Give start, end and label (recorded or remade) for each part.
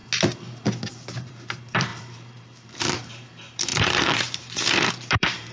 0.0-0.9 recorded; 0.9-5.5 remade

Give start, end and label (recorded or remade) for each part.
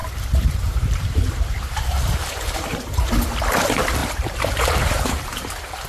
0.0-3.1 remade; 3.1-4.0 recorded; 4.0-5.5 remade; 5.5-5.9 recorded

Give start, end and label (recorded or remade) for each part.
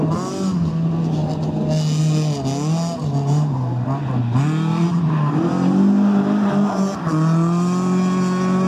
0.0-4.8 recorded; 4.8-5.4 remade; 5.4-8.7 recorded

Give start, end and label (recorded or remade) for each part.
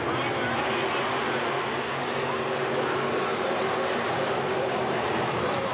0.0-3.3 recorded; 3.3-5.1 remade; 5.1-5.7 recorded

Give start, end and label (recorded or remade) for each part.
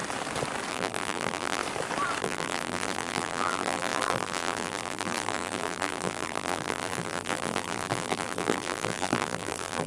0.0-0.7 recorded; 0.7-1.6 remade; 1.6-2.2 recorded; 2.2-9.9 remade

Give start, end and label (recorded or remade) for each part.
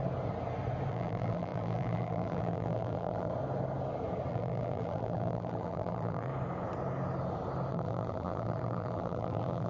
0.0-0.9 recorded; 0.9-3.3 remade; 3.3-4.3 recorded; 4.3-6.3 remade; 6.3-7.7 recorded; 7.7-9.7 remade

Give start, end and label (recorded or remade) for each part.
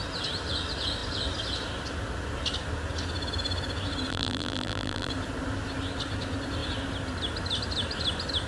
0.0-4.1 recorded; 4.1-5.1 remade; 5.1-8.5 recorded